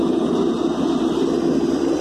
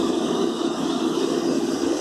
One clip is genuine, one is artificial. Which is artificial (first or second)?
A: second